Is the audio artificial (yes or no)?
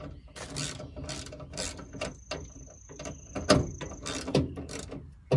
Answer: no